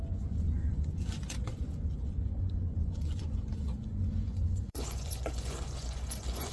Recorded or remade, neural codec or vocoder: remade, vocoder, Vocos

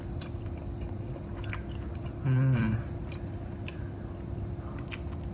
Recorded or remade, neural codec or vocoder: remade, vocoder, BigVGAN v2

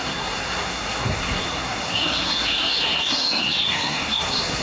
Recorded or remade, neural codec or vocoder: remade, codec, SNAC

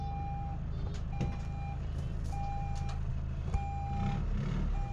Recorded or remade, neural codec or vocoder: recorded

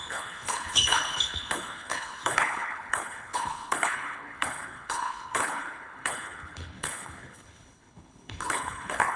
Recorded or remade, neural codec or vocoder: remade, codec, HILCodec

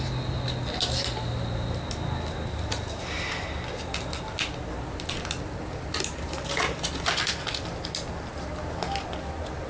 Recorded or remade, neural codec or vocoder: recorded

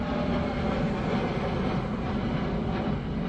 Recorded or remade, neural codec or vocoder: recorded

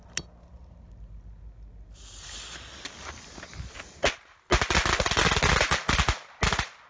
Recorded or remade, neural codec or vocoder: recorded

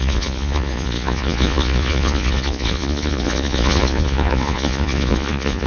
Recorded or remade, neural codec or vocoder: remade, vocoder, Vocos